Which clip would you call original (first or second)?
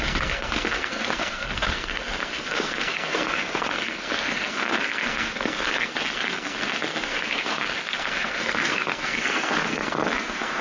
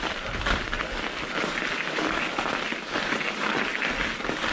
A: second